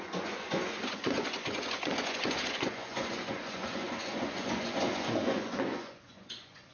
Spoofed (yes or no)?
yes